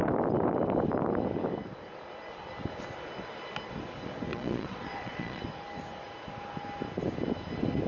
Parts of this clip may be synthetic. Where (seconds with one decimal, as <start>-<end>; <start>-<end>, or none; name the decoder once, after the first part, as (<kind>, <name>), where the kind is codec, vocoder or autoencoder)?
4.3-5.4 (vocoder, Vocos)